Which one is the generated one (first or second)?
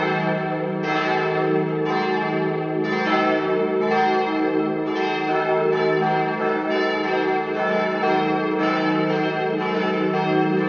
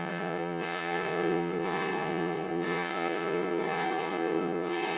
second